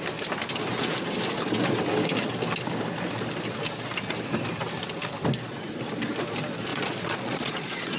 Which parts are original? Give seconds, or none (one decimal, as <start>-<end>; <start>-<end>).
0.0-6.7